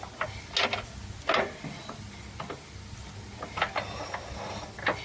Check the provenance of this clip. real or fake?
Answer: real